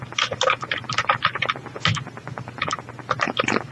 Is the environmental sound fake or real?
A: real